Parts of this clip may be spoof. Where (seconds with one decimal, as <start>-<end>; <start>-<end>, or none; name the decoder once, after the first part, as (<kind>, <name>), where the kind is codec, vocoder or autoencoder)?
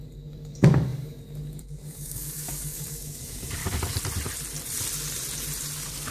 0.0-3.6 (codec, DAC)